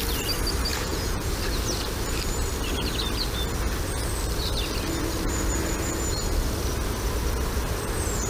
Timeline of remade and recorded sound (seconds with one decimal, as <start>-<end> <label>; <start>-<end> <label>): 0.0-0.7 recorded; 0.7-1.3 remade; 1.3-8.3 recorded